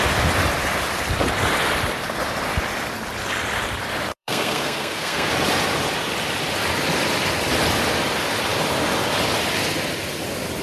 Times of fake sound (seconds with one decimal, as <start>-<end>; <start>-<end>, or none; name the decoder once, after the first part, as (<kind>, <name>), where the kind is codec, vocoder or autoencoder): 4.1-5.3 (codec, SNAC)